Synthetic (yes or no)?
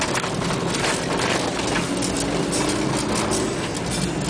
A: no